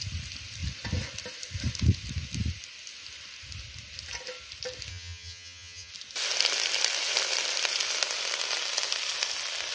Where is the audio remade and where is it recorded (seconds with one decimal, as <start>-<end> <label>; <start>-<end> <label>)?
0.0-4.9 recorded; 4.9-5.9 remade; 5.9-9.7 recorded